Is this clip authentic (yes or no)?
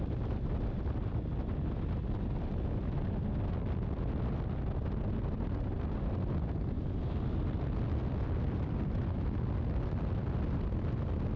yes